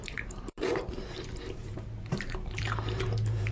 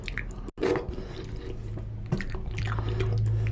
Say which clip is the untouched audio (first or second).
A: second